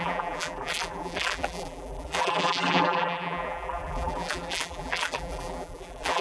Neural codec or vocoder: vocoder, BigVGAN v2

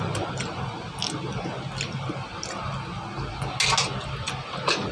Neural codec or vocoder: none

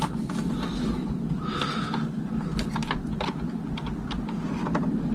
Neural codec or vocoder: none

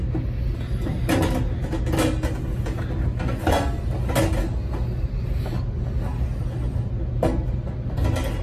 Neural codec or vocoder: none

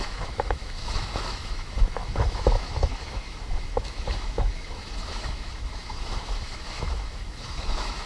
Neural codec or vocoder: autoencoder, DAC-VAE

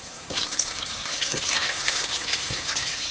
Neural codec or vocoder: codec, SNAC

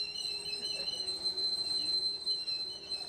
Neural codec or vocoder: none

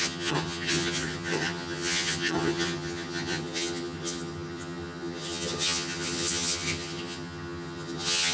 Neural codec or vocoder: vocoder, HiFi-GAN